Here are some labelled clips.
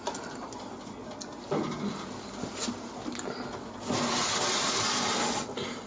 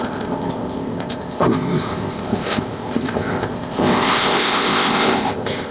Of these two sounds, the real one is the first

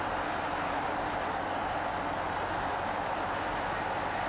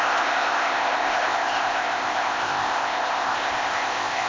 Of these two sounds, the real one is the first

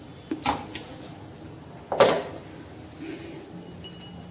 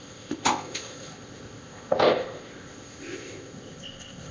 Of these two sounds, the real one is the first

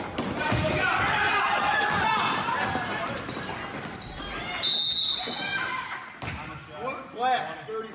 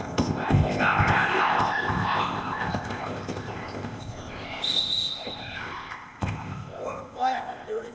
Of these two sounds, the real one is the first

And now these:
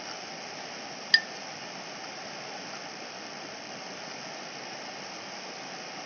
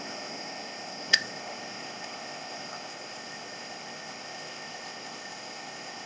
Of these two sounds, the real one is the first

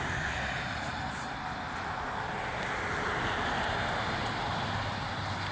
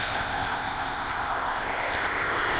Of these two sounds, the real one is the first